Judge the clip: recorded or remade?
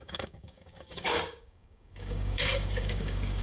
remade